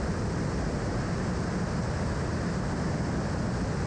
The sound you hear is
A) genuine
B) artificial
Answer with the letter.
A